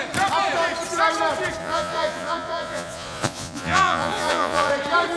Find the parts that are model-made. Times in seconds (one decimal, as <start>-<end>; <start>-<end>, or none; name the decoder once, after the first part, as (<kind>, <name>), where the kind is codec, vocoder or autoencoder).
1.6-4.7 (vocoder, Vocos)